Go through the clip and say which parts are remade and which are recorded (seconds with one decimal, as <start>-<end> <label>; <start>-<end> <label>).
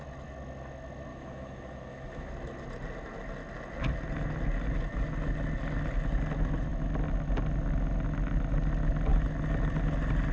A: 0.0-1.1 recorded; 1.1-2.3 remade; 2.3-10.3 recorded